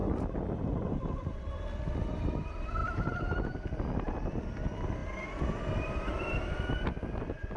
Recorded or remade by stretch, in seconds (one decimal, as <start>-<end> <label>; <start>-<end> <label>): 0.0-7.6 recorded